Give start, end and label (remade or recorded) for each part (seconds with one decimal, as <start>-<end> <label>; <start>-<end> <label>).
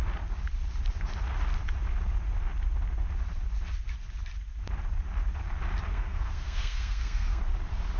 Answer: 0.0-5.9 recorded; 5.9-7.4 remade; 7.4-8.0 recorded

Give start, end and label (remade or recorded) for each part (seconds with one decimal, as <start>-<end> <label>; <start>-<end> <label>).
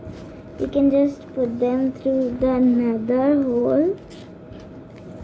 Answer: 0.0-5.2 recorded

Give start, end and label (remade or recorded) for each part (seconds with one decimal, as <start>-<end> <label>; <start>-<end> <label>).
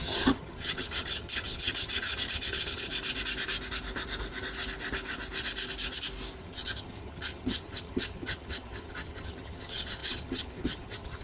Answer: 0.0-2.9 remade; 2.9-6.4 recorded; 6.4-11.2 remade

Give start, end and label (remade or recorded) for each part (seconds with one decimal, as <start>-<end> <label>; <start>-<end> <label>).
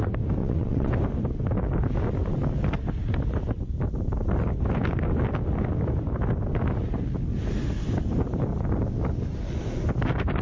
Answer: 0.0-0.4 recorded; 0.4-0.9 remade; 0.9-10.4 recorded